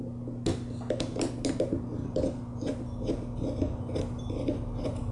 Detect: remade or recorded recorded